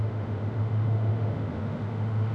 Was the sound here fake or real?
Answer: fake